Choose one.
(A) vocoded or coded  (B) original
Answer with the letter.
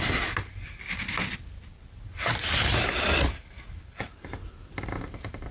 B